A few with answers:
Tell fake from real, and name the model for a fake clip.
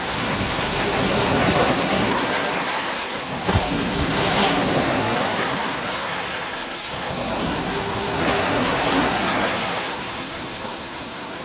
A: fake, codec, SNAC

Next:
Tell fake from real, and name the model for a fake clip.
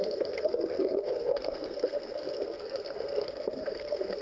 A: fake, codec, SNAC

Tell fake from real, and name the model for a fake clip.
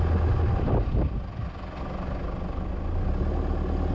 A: real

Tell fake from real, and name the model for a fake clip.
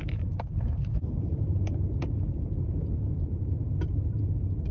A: fake, vocoder, BigVGAN v2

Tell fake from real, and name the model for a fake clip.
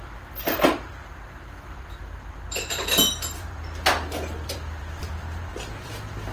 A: fake, vocoder, BigVGAN v2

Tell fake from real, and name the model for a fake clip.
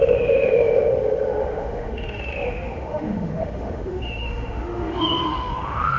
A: fake, autoencoder, DAC-VAE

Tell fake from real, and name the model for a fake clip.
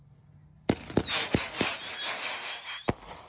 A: real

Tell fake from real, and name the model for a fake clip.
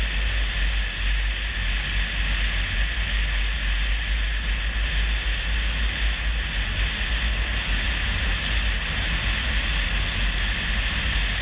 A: real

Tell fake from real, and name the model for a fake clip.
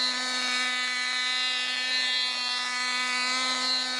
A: real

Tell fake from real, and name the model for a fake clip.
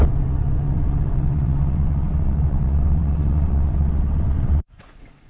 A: fake, vocoder, WaveNeXt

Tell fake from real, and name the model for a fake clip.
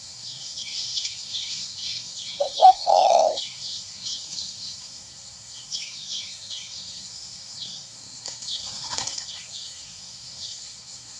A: fake, codec, SNAC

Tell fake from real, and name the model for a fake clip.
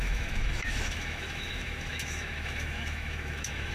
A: fake, autoencoder, DAC-VAE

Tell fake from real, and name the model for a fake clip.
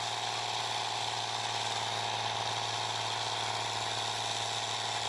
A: real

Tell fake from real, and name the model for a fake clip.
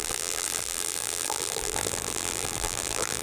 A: fake, vocoder, BigVGAN v2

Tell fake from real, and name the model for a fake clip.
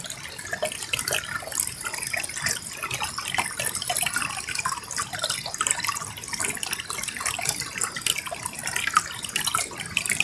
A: real